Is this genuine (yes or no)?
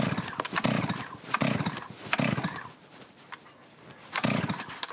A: yes